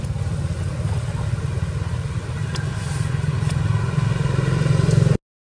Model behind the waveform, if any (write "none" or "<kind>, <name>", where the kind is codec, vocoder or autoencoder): none